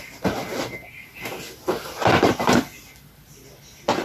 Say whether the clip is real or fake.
real